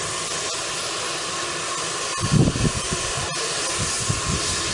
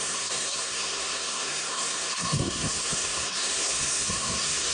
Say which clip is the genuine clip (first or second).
first